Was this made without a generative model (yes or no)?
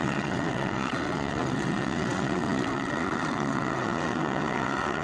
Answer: no